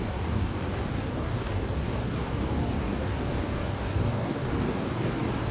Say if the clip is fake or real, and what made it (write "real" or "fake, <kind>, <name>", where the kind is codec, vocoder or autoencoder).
fake, codec, DAC